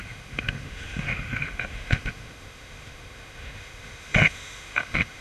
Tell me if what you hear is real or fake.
fake